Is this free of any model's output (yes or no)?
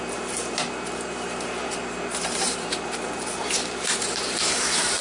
no